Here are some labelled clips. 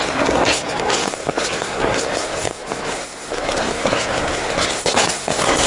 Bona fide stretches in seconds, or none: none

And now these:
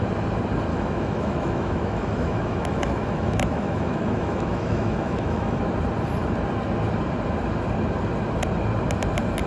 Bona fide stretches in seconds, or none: 0.0-0.7; 5.6-9.5

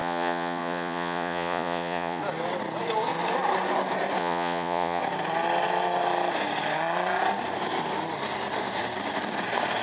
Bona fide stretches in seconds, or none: 2.2-4.2; 5.0-9.8

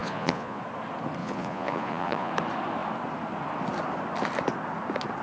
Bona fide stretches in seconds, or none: 0.6-1.2; 2.3-5.2